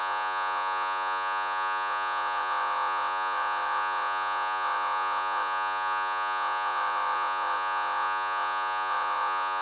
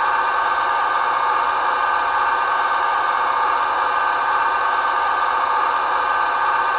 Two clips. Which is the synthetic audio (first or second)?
first